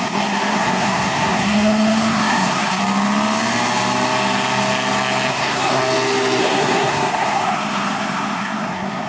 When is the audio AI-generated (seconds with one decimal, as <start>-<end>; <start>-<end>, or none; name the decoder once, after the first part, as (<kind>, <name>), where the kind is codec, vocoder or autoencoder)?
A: 0.0-2.8 (codec, SNAC); 5.3-5.8; 6.4-9.1